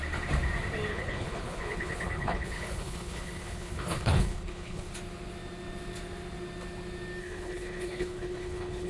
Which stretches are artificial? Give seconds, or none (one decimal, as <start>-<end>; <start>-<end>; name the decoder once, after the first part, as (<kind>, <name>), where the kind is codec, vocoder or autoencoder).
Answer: 0.9-4.9 (codec, HILCodec); 7.2-8.9

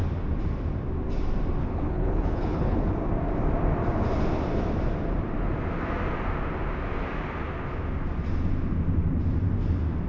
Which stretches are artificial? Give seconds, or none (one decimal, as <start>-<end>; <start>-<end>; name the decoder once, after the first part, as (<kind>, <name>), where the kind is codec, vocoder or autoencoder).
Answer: 1.6-2.9 (codec, HILCodec)